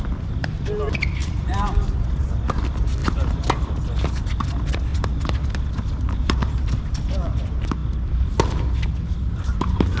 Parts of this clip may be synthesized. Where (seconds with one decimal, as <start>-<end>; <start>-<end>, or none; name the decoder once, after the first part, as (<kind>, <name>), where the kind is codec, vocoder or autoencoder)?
1.2-2.3 (vocoder, BigVGAN v2); 3.0-3.5; 4.9-6.8